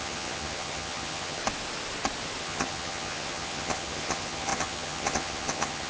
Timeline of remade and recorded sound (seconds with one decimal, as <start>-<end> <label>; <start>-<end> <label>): 0.0-1.4 remade; 1.4-2.4 recorded; 2.4-5.9 remade